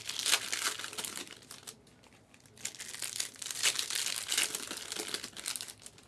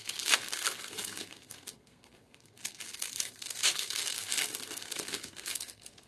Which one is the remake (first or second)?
second